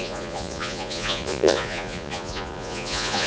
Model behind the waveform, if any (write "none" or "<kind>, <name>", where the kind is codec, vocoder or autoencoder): vocoder, Vocos